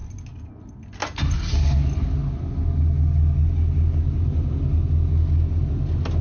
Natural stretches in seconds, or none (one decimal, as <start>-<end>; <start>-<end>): 0.0-6.2